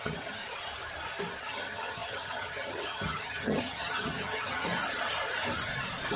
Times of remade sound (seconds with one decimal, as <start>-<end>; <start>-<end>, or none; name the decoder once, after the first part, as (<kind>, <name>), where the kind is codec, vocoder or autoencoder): 0.0-0.4 (vocoder, HiFi-GAN); 1.4-4.6